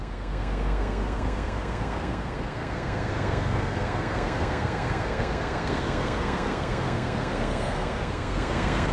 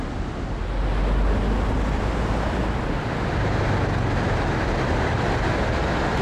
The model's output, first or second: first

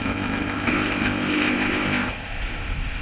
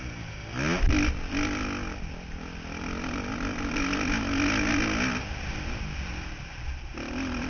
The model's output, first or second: first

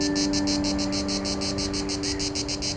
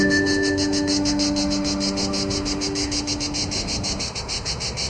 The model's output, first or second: second